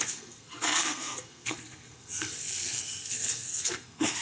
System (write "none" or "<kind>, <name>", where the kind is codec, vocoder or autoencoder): codec, SNAC